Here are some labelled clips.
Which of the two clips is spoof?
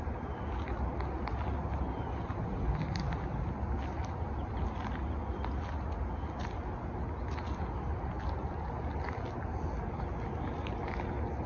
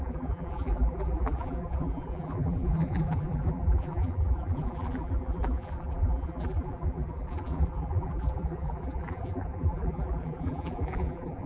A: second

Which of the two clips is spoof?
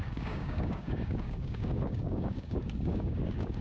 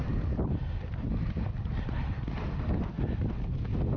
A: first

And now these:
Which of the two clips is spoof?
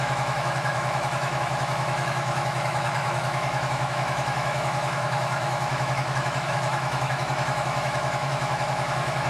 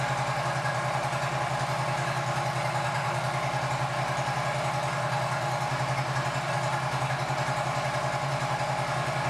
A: first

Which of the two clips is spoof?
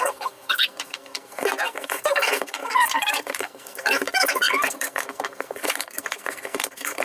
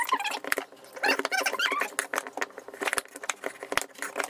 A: first